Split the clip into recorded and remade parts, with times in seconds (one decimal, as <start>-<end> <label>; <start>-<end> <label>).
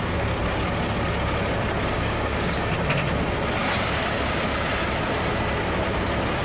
0.0-1.9 recorded; 1.9-2.7 remade; 2.7-6.4 recorded